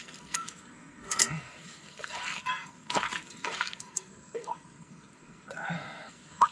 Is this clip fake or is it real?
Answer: fake